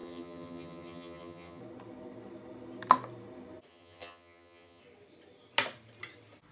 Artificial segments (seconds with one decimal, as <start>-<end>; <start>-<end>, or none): 0.0-1.6; 3.7-4.8